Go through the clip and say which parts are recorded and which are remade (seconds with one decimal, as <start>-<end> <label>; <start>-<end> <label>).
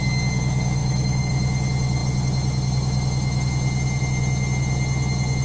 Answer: 0.0-0.8 recorded; 0.8-1.3 remade; 1.3-5.4 recorded